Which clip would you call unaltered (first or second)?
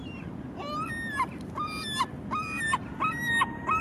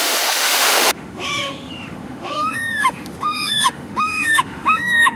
first